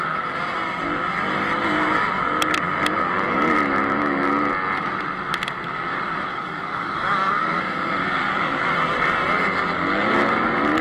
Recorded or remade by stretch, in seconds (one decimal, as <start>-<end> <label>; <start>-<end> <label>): 0.0-6.3 recorded; 6.3-7.6 remade; 7.6-10.8 recorded